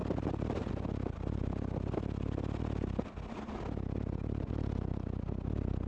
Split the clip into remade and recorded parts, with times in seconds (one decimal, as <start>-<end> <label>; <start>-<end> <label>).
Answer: 0.0-5.9 recorded